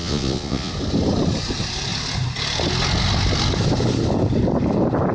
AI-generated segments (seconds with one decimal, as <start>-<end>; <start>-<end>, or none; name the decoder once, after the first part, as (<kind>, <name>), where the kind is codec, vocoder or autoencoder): 0.0-0.7 (vocoder, Vocos)